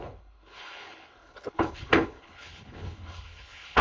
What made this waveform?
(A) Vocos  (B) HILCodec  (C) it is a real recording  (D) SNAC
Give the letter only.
B